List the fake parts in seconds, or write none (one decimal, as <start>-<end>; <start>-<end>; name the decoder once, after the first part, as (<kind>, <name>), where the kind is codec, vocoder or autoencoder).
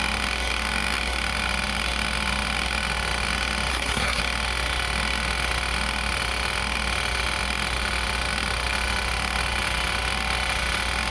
3.7-4.2 (codec, SNAC)